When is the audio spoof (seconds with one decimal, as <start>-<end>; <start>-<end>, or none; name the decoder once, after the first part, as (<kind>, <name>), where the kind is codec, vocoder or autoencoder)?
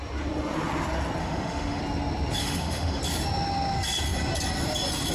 1.2-1.8 (autoencoder, DAC-VAE); 2.4-3.0